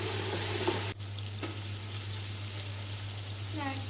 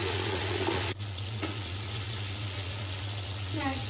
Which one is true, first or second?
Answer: first